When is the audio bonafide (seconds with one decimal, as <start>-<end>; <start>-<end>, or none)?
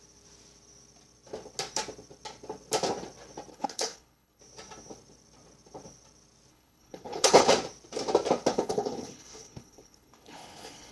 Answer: 0.0-3.5; 4.4-6.5; 7.5-8.5